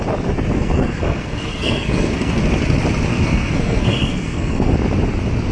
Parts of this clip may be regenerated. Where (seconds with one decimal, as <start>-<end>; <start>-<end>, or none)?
0.6-2.4; 3.1-4.7